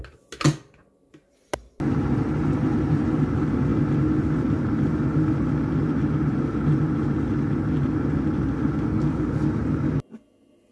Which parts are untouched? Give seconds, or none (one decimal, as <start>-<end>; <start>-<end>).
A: 0.0-10.7